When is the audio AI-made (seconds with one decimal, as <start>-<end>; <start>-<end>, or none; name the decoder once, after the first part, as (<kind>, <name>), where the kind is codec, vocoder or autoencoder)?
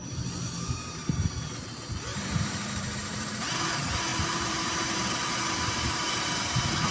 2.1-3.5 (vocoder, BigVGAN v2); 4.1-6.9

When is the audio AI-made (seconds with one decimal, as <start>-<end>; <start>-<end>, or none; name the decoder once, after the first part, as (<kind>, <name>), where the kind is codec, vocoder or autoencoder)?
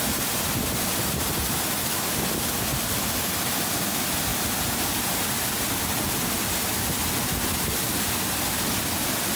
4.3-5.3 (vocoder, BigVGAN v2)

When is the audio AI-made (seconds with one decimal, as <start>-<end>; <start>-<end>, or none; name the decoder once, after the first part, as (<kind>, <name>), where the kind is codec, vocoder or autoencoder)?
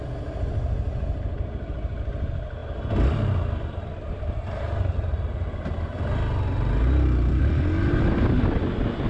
none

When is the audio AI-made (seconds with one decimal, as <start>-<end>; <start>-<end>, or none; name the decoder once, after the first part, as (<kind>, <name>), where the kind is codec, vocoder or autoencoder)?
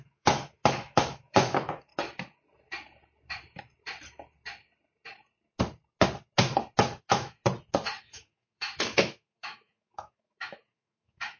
0.0-1.9 (autoencoder, DAC-VAE); 7.0-7.4; 8.0-11.4